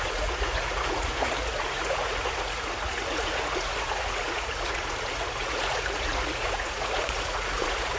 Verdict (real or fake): fake